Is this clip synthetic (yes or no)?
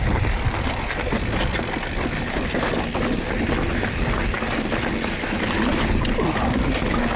no